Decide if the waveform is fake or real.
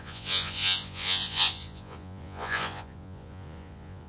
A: fake